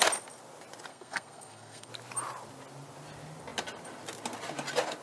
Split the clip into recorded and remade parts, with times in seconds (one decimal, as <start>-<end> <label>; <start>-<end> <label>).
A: 0.0-0.9 recorded; 0.9-1.9 remade; 1.9-5.0 recorded